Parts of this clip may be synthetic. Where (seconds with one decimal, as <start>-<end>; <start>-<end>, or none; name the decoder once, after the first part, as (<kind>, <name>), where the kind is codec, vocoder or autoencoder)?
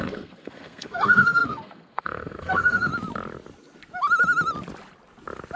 0.0-2.9 (codec, SNAC)